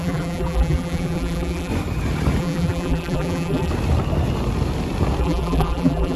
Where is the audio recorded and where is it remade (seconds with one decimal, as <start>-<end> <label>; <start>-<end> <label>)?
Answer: 0.0-1.7 remade; 1.7-2.4 recorded; 2.4-3.7 remade; 3.7-5.2 recorded; 5.2-6.2 remade